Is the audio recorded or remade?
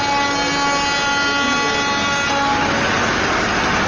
recorded